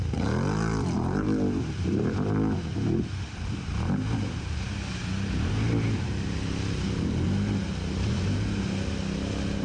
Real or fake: real